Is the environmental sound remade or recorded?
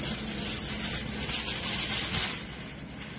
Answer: recorded